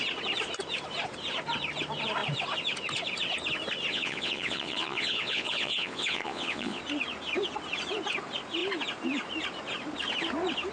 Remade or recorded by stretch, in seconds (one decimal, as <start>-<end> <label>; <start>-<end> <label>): 0.0-3.9 recorded; 3.9-6.8 remade; 6.8-10.7 recorded